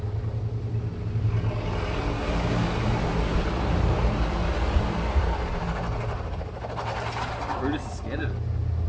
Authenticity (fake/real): real